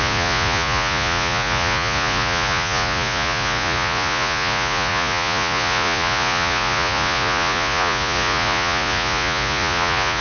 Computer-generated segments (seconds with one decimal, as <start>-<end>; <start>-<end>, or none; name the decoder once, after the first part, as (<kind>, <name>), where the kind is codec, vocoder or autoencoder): 0.0-10.2 (vocoder, Vocos)